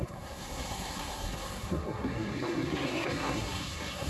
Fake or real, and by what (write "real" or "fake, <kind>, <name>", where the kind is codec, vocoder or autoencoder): fake, codec, SNAC